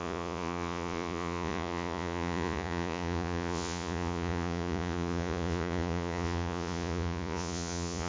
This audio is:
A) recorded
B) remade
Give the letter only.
B